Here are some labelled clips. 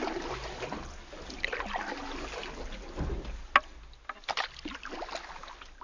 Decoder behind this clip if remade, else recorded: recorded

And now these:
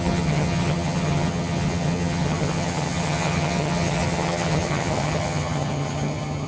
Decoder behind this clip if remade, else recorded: remade, vocoder, HiFi-GAN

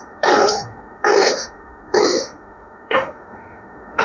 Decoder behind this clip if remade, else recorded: remade, autoencoder, DAC-VAE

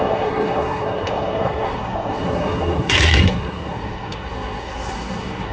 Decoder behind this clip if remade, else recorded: remade, codec, SNAC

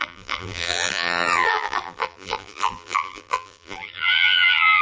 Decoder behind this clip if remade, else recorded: remade, vocoder, BigVGAN v2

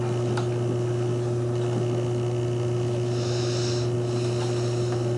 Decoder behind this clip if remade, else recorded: recorded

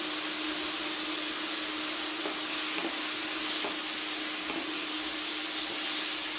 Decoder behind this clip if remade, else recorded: recorded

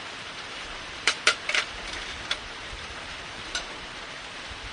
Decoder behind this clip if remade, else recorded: remade, vocoder, BigVGAN v2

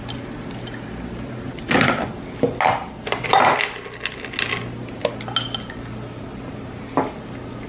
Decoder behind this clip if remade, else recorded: recorded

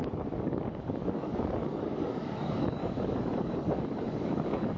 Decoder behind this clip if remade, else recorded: remade, codec, DAC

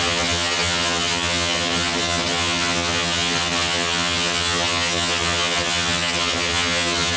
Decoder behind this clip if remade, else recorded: remade, vocoder, HiFi-GAN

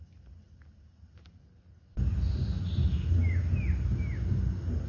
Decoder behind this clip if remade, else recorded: recorded